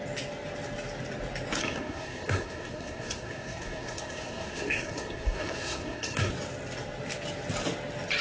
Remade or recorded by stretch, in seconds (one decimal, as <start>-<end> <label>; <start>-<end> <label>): 0.0-1.6 recorded; 1.6-6.3 remade; 6.3-8.2 recorded